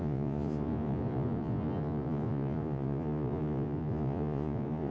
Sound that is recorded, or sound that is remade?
remade